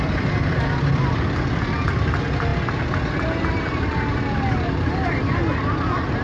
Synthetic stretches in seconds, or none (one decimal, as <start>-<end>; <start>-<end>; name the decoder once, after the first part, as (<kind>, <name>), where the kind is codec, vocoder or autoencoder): none